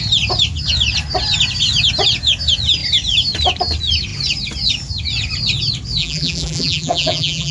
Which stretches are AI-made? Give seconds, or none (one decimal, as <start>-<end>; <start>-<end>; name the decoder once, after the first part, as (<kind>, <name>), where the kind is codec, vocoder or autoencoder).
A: 6.0-7.5 (vocoder, BigVGAN v2)